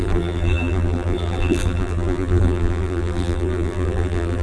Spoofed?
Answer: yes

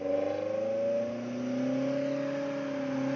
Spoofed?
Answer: no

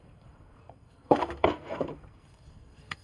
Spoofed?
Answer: yes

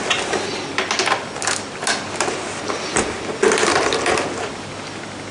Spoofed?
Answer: no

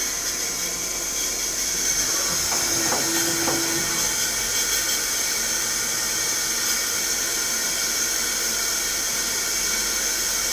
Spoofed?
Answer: no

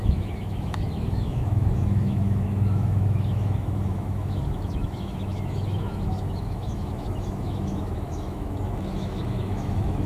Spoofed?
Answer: yes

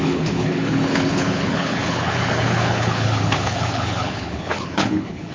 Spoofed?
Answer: yes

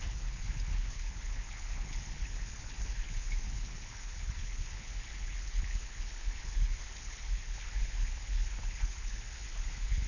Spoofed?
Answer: yes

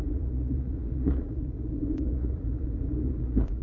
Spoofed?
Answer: yes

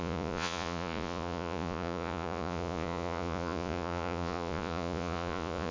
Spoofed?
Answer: yes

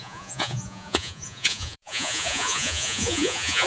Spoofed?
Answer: yes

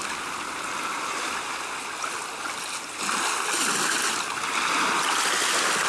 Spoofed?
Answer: no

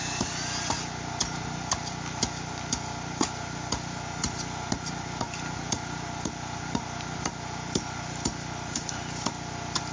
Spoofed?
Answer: no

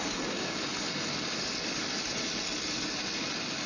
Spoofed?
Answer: no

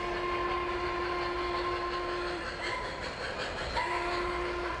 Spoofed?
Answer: no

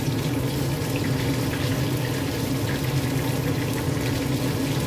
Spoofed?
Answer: no